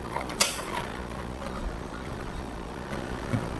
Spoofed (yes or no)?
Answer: yes